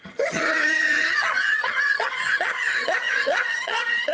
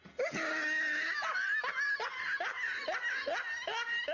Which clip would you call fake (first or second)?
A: first